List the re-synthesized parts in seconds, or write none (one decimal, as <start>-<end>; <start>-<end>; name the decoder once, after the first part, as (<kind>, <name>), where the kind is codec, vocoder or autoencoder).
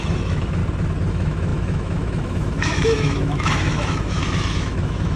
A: 0.0-0.6 (autoencoder, DAC-VAE); 1.1-5.2